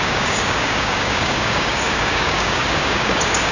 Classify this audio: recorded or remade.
remade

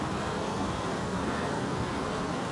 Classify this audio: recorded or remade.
remade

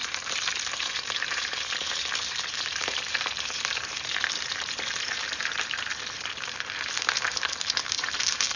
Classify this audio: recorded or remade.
remade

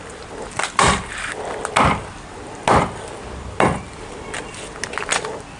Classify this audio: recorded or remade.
recorded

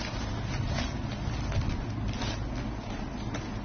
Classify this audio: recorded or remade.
recorded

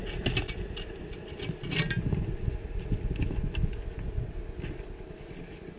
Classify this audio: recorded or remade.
recorded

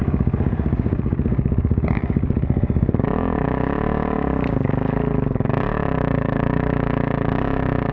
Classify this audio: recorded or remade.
remade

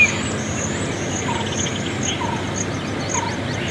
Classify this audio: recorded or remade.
recorded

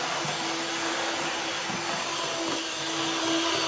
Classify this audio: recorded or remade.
recorded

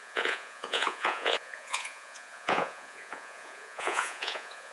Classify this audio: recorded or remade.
remade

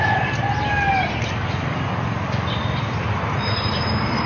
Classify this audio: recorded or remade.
recorded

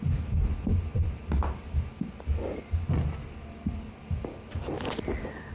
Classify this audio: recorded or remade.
recorded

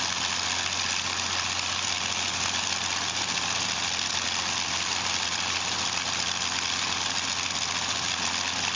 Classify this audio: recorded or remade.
recorded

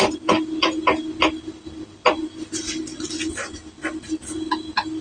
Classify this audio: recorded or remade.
recorded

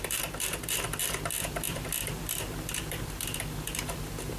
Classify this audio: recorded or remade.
remade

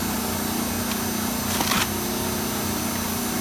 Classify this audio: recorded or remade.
recorded